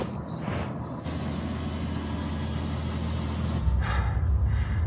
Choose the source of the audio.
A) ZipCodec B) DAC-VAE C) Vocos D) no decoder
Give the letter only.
D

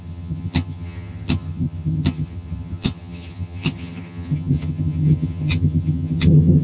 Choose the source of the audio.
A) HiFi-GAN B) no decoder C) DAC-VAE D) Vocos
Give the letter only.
A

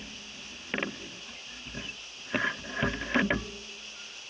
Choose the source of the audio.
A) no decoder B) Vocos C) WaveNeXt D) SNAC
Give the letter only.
A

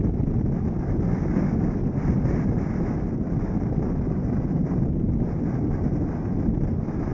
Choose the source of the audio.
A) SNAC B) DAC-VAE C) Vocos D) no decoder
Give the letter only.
D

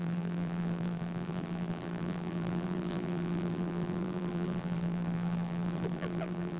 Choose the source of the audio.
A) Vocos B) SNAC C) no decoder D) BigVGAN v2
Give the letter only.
D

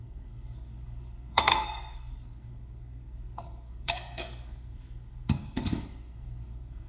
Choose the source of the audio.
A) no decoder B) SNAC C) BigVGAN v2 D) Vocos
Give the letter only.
B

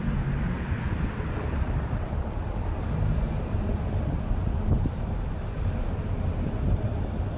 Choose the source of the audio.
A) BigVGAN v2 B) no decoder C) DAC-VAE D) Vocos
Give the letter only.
A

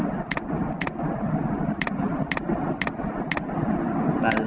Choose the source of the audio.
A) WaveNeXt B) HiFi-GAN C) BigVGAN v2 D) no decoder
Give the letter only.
D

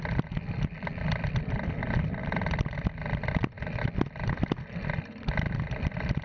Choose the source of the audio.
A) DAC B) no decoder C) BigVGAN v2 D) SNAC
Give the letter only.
B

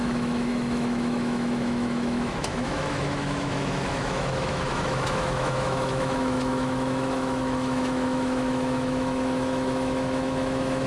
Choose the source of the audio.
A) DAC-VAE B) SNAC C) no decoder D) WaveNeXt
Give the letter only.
A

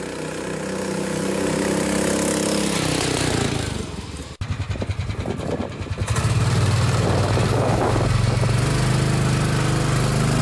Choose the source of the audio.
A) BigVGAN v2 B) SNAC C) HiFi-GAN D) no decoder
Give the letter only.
D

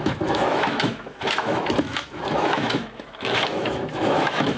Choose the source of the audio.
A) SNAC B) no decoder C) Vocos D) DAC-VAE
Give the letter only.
D